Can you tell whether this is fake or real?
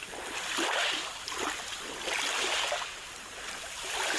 real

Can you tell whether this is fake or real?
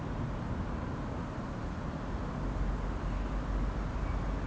real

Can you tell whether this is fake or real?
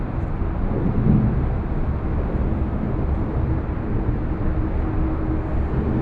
real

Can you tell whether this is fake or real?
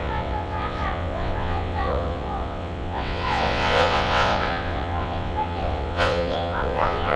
fake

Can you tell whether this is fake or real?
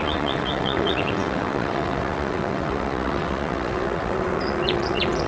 fake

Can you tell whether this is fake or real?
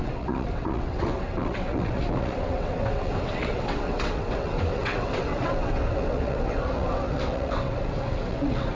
fake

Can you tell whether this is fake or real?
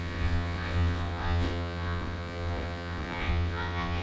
fake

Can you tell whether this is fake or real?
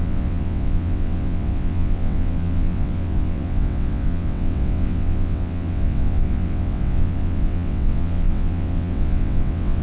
fake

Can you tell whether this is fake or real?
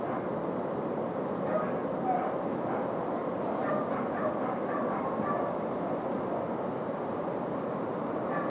real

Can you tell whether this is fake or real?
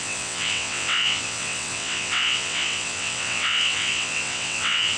fake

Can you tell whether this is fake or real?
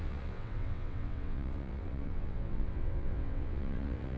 fake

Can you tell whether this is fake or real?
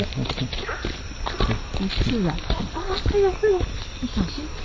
real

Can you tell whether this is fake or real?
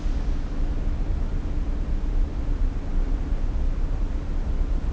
real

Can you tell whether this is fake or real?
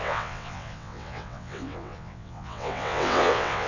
fake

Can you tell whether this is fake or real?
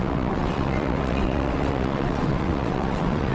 fake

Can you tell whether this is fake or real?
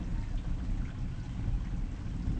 real